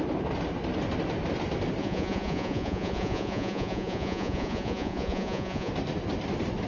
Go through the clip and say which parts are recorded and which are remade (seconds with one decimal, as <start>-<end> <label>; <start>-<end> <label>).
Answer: 0.0-1.8 recorded; 1.8-5.7 remade; 5.7-6.7 recorded